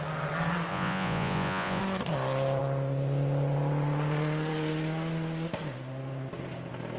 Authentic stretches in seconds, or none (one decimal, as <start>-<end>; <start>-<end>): 0.0-0.7; 1.8-7.0